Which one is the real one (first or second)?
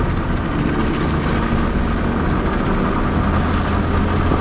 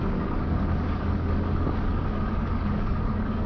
first